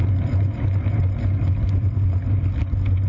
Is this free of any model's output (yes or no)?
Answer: yes